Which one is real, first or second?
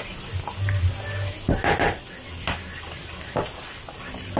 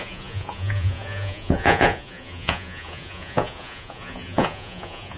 first